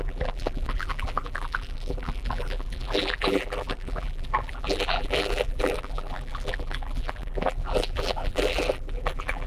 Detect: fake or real fake